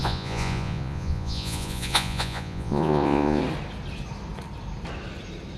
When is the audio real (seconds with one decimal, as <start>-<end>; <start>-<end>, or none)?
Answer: 3.4-5.6

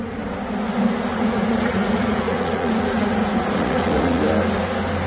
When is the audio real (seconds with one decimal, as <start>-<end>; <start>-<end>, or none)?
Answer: 0.0-1.1; 4.2-5.1

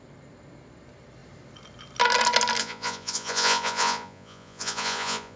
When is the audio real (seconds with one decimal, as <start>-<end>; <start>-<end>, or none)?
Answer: 0.0-2.6